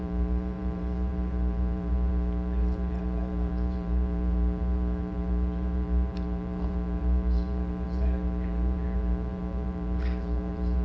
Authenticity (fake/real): fake